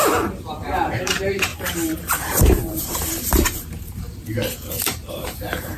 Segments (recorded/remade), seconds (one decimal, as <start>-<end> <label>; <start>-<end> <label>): 0.0-0.5 recorded; 0.5-1.5 remade; 1.5-2.2 recorded; 2.2-5.8 remade